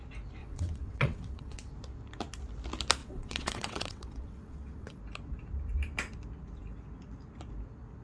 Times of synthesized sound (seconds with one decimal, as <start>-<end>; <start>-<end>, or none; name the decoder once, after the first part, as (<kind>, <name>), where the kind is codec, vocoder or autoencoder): 0.4-1.7 (vocoder, WaveNeXt); 3.0-5.0